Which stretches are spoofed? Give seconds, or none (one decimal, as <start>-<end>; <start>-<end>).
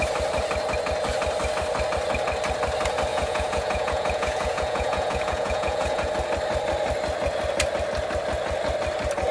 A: 3.1-6.1